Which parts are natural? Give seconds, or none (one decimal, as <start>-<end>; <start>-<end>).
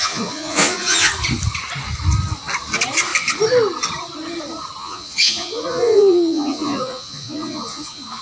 1.1-4.8